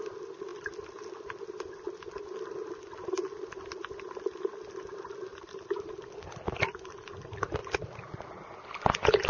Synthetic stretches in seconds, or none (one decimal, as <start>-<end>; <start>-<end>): 5.3-5.9